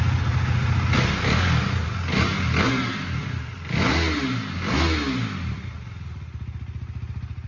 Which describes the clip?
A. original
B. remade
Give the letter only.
A